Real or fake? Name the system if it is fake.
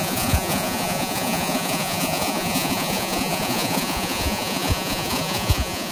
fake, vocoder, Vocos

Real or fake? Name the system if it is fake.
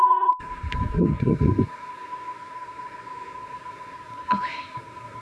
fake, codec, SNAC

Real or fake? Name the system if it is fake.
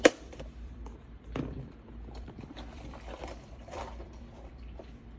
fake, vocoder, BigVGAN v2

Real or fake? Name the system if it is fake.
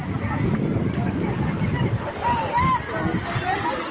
real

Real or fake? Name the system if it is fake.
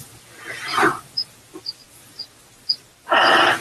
real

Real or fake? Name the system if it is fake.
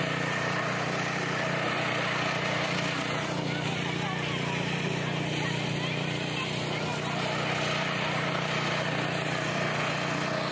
real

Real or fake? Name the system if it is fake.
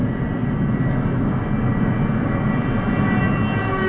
real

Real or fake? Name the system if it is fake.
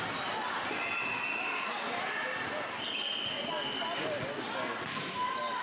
real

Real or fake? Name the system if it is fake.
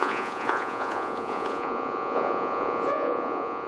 fake, vocoder, Vocos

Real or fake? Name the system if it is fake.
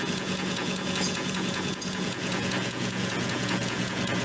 fake, vocoder, Vocos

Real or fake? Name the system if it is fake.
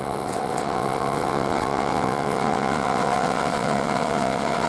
fake, vocoder, WaveNeXt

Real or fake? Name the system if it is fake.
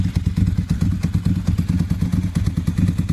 real